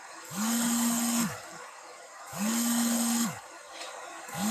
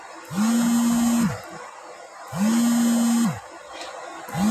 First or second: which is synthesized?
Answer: first